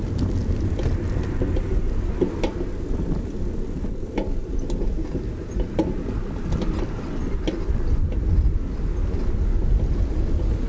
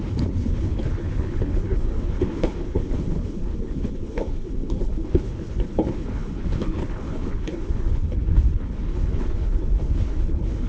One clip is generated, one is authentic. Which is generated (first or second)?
second